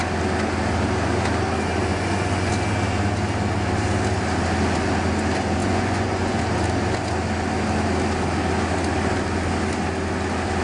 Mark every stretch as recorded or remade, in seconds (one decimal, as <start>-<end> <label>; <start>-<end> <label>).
0.0-1.9 recorded; 1.9-2.5 remade; 2.5-5.6 recorded; 5.6-6.4 remade; 6.4-10.6 recorded